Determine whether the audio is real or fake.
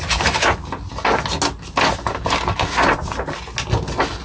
real